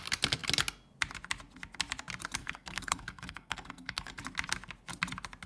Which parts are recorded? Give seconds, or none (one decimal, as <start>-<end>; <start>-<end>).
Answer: 0.0-2.4; 4.2-5.5

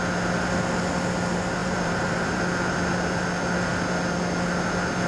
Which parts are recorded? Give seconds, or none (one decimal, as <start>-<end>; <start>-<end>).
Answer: 0.0-1.6; 2.4-5.1

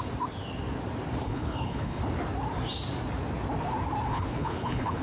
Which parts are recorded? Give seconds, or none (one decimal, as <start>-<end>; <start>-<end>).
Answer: 0.0-1.2; 2.0-4.1